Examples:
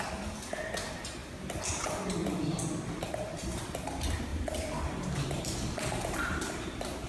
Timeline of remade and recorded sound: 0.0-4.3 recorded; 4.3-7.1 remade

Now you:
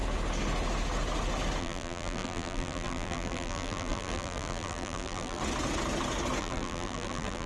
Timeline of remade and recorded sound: 0.0-1.6 recorded; 1.6-5.4 remade; 5.4-6.4 recorded; 6.4-7.5 remade

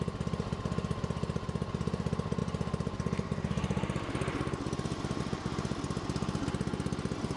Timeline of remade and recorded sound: 0.0-7.4 recorded

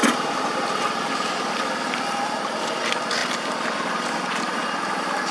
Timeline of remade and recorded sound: 0.0-2.8 remade; 2.8-5.3 recorded

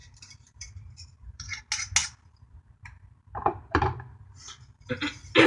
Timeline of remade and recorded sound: 0.0-1.6 remade; 1.6-2.0 recorded; 2.0-4.9 remade; 4.9-5.5 recorded

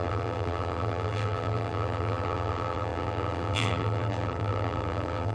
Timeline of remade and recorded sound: 0.0-5.3 remade